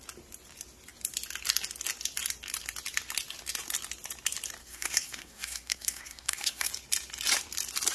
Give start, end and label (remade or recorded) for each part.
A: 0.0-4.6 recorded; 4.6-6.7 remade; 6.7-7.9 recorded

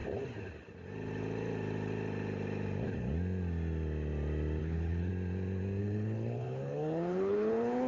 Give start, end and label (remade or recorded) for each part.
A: 0.0-4.6 recorded; 4.6-5.1 remade; 5.1-5.8 recorded; 5.8-7.9 remade